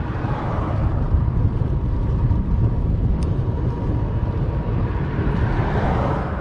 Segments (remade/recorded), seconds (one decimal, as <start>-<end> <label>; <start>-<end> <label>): 0.0-6.4 remade

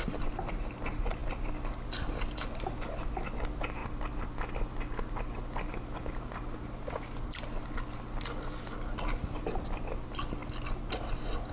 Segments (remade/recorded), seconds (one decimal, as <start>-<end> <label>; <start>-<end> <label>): 0.0-11.5 recorded

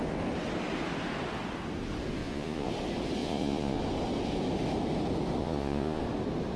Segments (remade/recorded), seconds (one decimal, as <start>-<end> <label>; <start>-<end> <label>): 0.0-2.2 recorded; 2.2-2.7 remade; 2.7-3.2 recorded; 3.2-3.8 remade; 3.8-5.4 recorded; 5.4-6.0 remade; 6.0-6.6 recorded

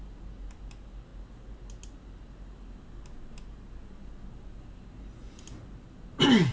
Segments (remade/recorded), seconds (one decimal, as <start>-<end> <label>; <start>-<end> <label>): 0.0-6.5 recorded